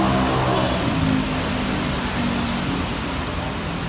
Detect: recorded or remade recorded